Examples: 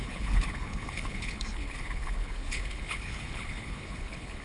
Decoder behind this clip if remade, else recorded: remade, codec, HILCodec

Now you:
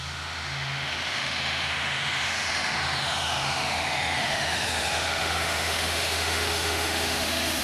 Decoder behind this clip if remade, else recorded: remade, autoencoder, DAC-VAE